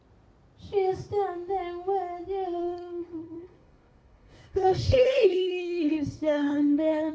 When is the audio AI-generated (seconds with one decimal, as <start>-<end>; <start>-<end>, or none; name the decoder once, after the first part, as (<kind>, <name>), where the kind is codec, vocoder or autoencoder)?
2.6-7.1 (codec, SNAC)